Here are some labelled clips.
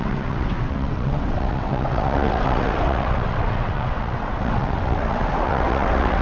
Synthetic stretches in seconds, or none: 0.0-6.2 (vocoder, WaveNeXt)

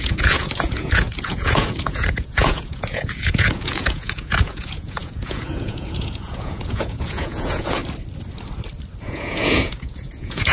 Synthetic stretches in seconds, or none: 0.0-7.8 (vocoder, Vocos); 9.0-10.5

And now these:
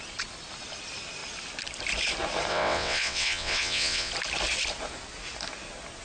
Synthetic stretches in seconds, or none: 2.5-4.1 (vocoder, WaveNeXt)

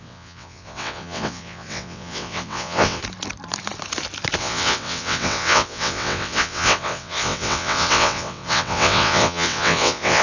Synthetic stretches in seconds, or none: 0.0-3.0 (vocoder, WaveNeXt); 4.4-10.2